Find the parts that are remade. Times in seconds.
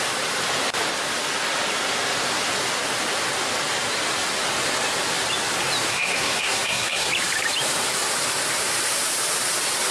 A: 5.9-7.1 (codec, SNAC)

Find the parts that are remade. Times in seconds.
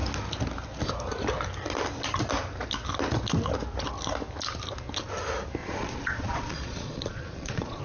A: 5.6-7.8 (vocoder, Vocos)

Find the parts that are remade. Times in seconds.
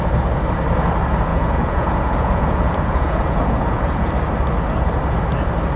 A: 1.3-4.1 (vocoder, Vocos)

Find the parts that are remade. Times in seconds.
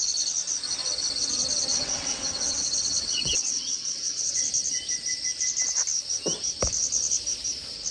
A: 1.7-4.4 (vocoder, WaveNeXt)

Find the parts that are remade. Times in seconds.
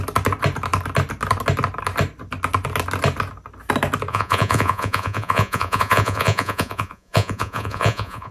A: 4.1-8.3 (vocoder, Vocos)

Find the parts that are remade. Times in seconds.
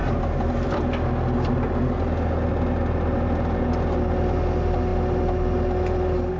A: none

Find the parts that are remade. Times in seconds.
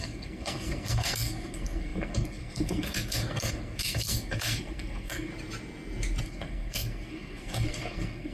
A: 0.0-5.3 (codec, SNAC); 6.2-8.3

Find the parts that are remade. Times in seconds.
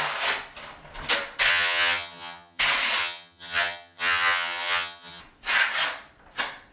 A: 1.5-2.6 (vocoder, HiFi-GAN); 3.0-5.2